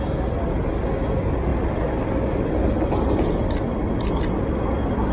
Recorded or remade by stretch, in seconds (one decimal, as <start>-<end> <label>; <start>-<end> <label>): 0.0-5.1 recorded